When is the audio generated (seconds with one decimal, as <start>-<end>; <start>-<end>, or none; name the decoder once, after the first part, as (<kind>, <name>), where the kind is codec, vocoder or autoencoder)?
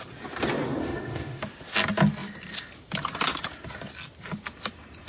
0.8-1.4 (autoencoder, DAC-VAE)